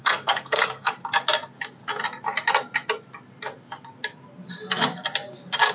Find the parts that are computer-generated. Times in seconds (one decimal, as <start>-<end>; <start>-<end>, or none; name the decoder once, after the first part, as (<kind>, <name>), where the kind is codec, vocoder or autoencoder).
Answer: 0.0-0.9 (codec, SNAC)